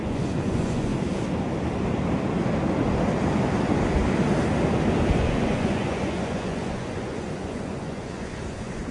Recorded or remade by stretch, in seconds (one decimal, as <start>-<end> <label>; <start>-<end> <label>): 0.0-0.9 remade; 0.9-5.2 recorded; 5.2-8.9 remade